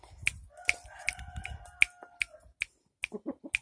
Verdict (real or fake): real